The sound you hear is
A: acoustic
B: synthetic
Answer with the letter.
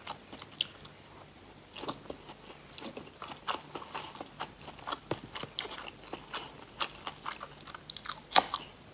A